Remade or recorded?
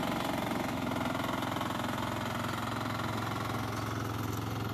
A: recorded